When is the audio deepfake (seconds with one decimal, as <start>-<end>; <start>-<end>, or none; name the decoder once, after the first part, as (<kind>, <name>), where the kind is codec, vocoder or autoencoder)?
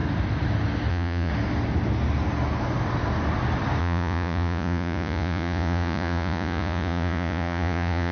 0.9-1.3 (vocoder, Vocos); 3.8-8.1